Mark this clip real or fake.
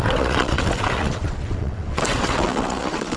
fake